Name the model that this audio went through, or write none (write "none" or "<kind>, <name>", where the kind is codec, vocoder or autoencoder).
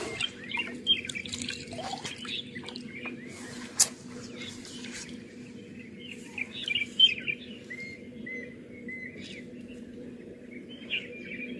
none